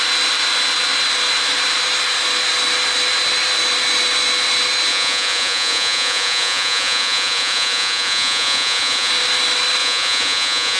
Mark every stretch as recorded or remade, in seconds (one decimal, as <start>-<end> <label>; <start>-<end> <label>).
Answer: 0.0-4.9 recorded; 4.9-9.1 remade; 9.1-9.8 recorded; 9.8-10.8 remade